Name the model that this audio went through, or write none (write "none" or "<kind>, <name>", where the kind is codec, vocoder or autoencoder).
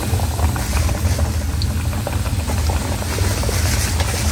none